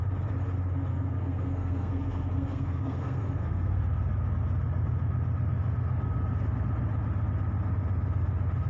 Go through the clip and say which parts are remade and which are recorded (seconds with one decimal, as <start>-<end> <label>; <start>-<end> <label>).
0.0-0.9 recorded; 0.9-3.8 remade; 3.8-8.7 recorded